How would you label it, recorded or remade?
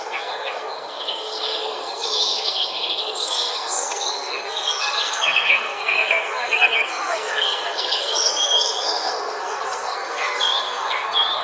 remade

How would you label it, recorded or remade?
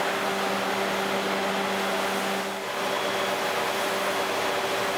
recorded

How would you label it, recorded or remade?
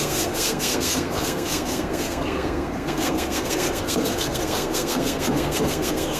remade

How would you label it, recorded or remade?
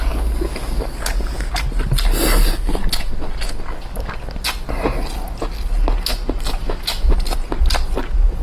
recorded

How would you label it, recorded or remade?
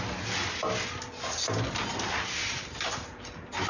recorded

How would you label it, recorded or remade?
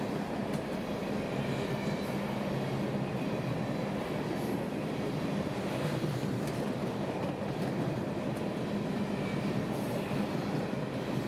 recorded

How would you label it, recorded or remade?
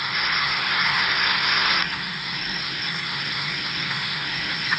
remade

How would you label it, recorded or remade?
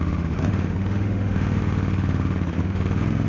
remade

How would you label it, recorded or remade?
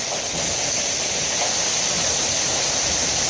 recorded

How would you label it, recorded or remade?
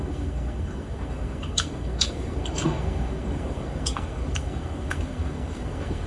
remade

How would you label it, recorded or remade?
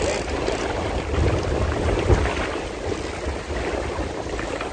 recorded